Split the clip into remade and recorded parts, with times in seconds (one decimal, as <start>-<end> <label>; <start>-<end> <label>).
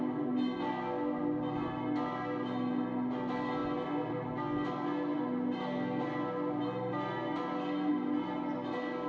0.0-9.1 recorded